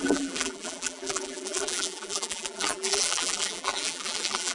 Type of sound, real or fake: fake